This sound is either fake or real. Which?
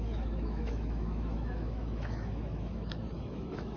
fake